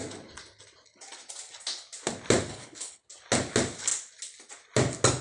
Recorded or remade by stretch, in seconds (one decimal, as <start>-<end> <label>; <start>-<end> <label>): 0.0-2.5 recorded; 2.5-3.1 remade; 3.1-5.2 recorded